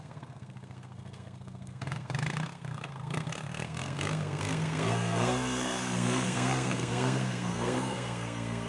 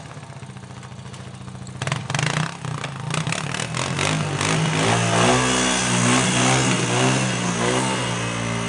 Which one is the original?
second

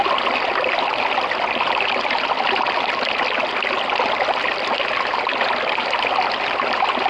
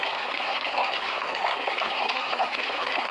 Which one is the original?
first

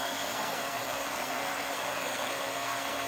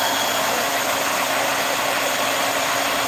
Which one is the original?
second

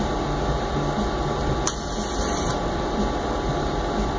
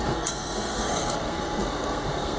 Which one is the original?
first